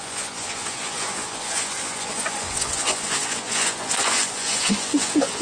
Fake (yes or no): yes